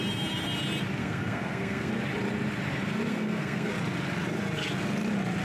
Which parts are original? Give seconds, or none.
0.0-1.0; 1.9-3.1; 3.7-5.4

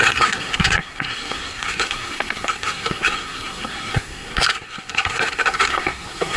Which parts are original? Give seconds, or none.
none

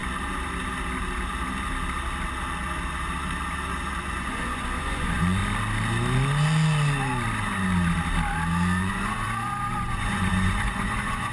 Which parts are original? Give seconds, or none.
0.0-4.0; 5.4-8.8

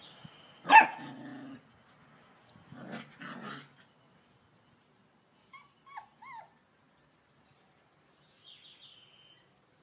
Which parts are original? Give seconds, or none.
0.0-9.8

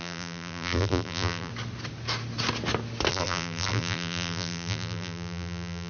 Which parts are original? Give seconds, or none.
1.5-3.1

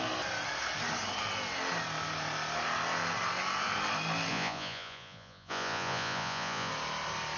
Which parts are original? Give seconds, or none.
0.0-4.3; 6.7-7.4

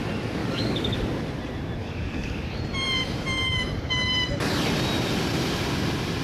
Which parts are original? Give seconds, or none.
0.0-0.4; 1.0-1.8; 2.6-6.2